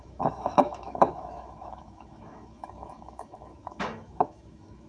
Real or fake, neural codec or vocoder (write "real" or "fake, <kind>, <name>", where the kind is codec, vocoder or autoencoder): fake, autoencoder, DAC-VAE